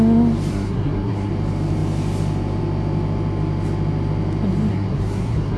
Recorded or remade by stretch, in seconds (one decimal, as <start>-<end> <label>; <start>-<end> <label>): 0.0-0.5 recorded; 0.5-1.3 remade; 1.3-4.7 recorded; 4.7-5.6 remade